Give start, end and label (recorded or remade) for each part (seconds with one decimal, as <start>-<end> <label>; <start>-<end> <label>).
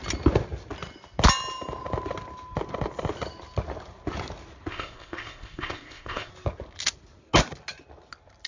0.0-4.7 recorded; 4.7-6.3 remade; 6.3-8.5 recorded